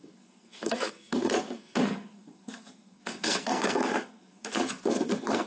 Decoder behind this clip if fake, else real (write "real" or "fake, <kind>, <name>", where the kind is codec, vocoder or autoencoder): fake, codec, SNAC